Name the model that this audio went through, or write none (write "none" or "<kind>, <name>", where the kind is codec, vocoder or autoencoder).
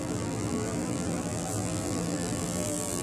vocoder, BigVGAN v2